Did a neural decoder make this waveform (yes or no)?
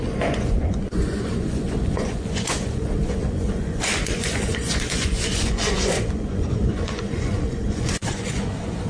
yes